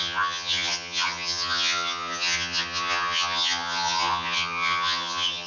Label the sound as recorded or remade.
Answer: remade